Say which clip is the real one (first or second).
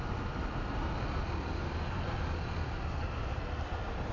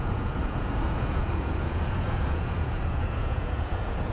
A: first